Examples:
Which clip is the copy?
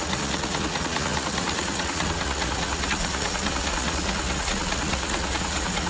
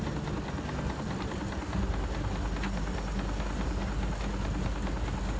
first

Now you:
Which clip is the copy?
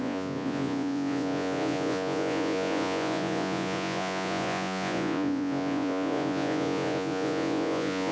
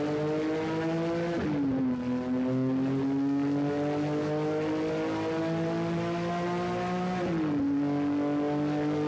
first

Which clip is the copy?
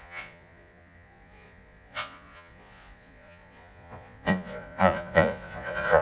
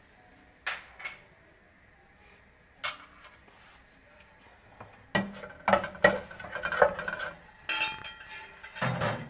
first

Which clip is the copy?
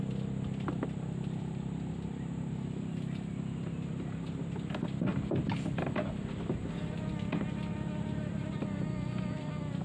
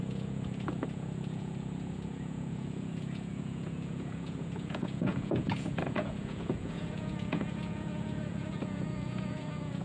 second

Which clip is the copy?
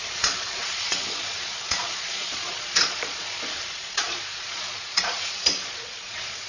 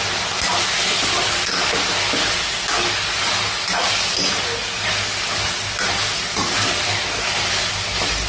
first